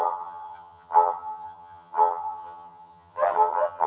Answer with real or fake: fake